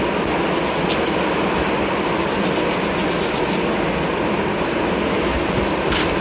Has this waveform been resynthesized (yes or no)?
no